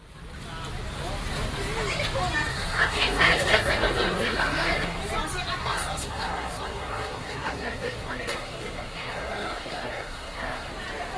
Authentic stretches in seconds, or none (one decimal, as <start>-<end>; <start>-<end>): 0.0-2.5; 5.0-5.6; 10.7-11.2